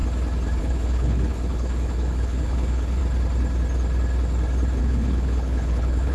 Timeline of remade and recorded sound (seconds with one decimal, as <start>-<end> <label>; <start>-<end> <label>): 0.0-0.6 recorded; 0.6-3.0 remade; 3.0-4.8 recorded; 4.8-6.1 remade